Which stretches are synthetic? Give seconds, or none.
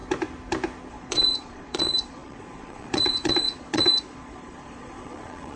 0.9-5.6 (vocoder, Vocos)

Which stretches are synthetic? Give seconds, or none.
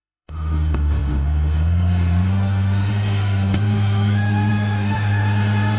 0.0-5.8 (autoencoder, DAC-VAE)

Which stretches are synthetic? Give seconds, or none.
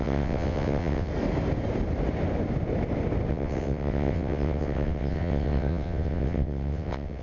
0.0-1.1 (vocoder, WaveNeXt); 3.3-7.2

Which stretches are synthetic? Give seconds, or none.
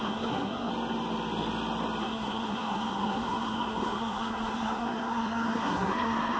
0.0-0.7 (codec, SNAC); 2.0-6.4